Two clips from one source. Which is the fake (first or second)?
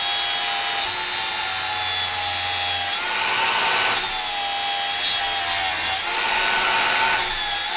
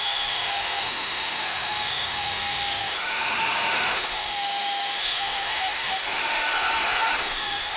second